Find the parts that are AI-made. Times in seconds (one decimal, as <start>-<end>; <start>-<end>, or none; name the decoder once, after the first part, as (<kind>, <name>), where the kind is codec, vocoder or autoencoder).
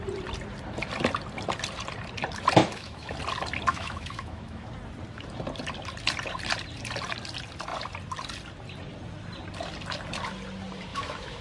2.6-3.1 (autoencoder, DAC-VAE); 3.7-4.7; 10.9-11.4